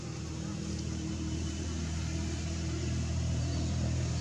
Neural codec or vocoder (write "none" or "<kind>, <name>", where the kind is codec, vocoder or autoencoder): none